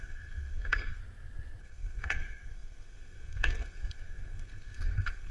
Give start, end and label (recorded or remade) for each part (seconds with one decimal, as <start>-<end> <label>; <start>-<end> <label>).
0.0-1.0 remade; 1.0-1.6 recorded; 1.6-5.3 remade